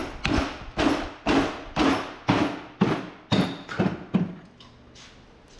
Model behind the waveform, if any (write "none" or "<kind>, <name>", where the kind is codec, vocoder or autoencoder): none